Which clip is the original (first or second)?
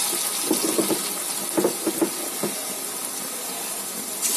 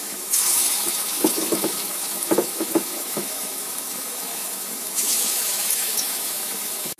first